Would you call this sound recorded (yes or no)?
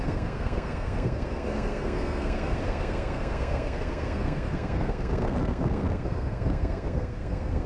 no